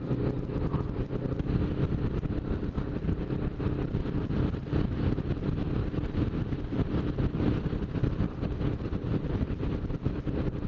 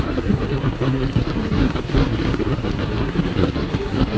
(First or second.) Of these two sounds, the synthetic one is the second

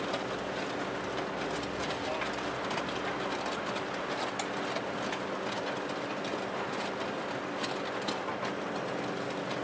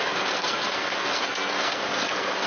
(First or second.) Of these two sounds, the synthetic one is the second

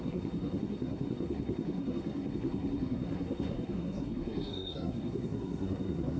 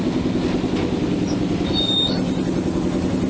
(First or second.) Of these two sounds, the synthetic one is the first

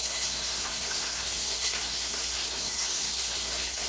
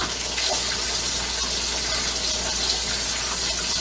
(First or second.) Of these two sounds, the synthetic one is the first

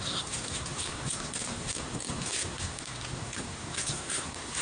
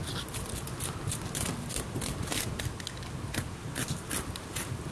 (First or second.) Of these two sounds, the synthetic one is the first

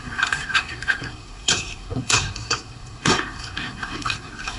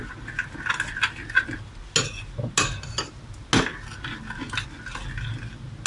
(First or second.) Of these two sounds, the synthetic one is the first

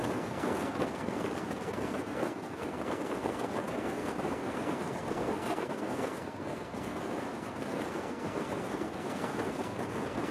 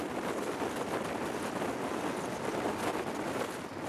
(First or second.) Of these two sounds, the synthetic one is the first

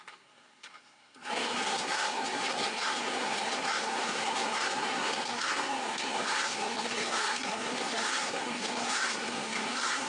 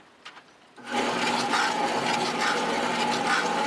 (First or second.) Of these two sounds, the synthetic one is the first